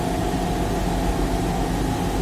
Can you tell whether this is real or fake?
real